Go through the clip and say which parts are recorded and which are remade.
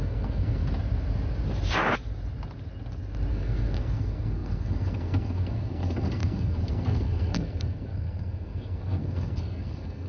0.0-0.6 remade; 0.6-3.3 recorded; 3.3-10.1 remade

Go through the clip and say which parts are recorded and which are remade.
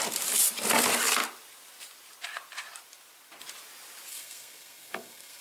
0.0-4.1 recorded; 4.1-5.4 remade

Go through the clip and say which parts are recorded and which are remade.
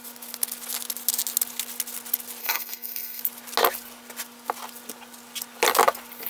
0.0-2.4 recorded; 2.4-3.2 remade; 3.2-6.3 recorded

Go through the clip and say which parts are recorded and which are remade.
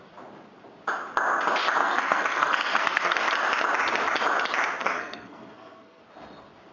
0.0-1.8 recorded; 1.8-3.2 remade; 3.2-4.8 recorded; 4.8-6.0 remade; 6.0-6.7 recorded